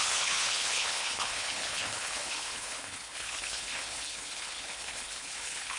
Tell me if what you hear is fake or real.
fake